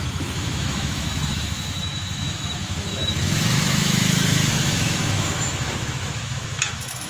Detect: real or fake fake